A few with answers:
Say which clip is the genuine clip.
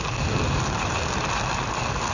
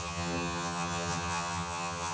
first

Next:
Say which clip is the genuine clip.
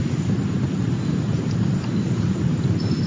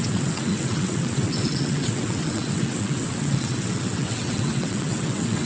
first